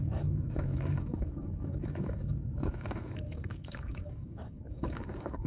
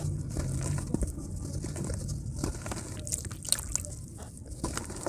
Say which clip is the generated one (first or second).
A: first